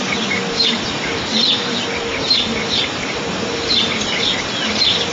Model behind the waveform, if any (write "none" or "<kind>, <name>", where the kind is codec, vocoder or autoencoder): none